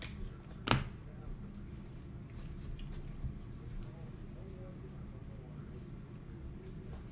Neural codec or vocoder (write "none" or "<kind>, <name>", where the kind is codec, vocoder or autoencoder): none